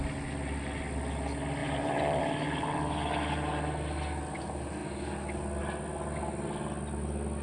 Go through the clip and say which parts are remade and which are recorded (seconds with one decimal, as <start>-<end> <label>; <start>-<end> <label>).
0.0-1.6 recorded; 1.6-2.2 remade; 2.2-7.4 recorded